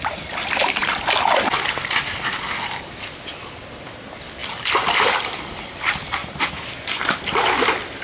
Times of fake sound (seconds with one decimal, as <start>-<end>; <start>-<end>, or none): 6.2-7.0